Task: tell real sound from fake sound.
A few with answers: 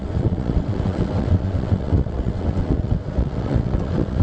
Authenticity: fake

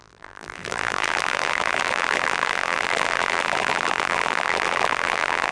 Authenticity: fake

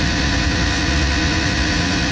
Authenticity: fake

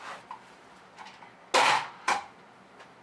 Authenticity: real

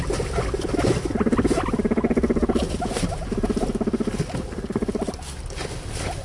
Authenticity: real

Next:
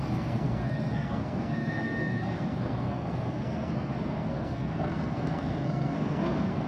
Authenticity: fake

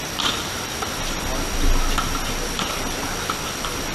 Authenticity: real